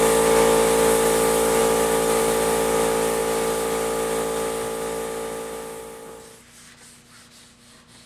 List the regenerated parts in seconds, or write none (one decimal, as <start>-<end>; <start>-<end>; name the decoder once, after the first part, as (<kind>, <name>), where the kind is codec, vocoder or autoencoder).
none